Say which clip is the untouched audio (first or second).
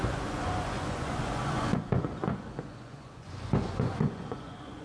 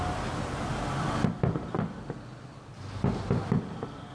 second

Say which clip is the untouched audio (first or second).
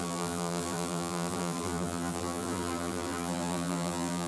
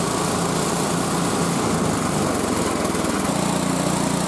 second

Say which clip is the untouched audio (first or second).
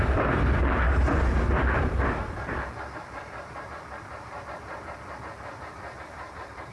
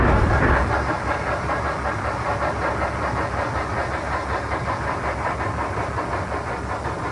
second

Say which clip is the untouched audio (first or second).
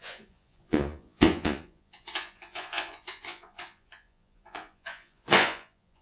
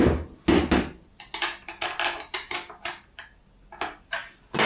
second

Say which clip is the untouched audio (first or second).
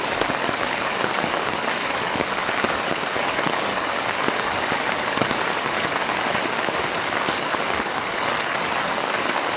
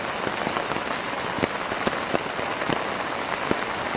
second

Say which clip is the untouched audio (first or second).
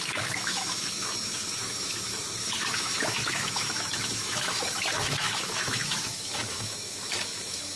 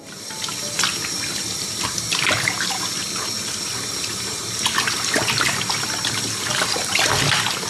second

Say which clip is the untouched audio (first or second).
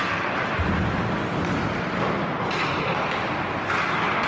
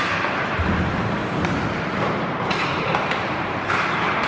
first